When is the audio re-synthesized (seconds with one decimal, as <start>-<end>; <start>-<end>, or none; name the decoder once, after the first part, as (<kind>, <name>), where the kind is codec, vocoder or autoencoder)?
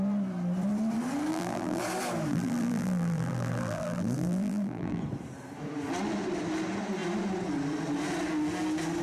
1.3-1.8 (vocoder, BigVGAN v2); 2.3-5.0